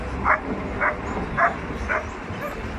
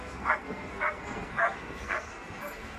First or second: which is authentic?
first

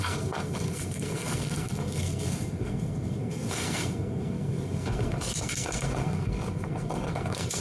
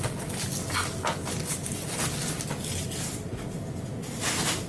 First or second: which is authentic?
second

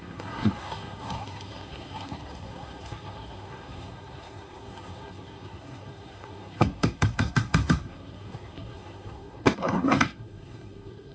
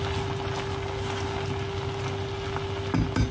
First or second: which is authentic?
second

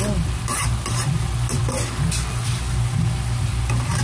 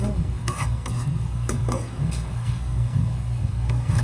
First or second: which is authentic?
first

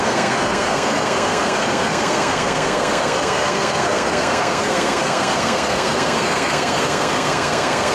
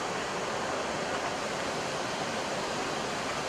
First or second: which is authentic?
second